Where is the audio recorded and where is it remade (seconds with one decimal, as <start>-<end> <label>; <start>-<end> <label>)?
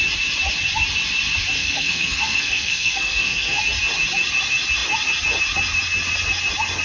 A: 0.0-1.6 recorded; 1.6-3.6 remade; 3.6-6.8 recorded